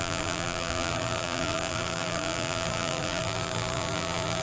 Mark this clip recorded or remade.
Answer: remade